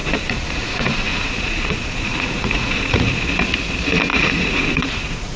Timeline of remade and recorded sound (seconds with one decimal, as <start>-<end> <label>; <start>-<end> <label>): 0.0-3.2 remade; 3.2-4.1 recorded; 4.1-5.4 remade